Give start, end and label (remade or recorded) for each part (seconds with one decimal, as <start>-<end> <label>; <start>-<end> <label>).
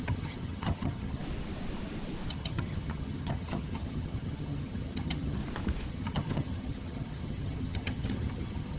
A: 0.0-1.2 remade; 1.2-2.3 recorded; 2.3-5.4 remade; 5.4-5.9 recorded; 5.9-8.8 remade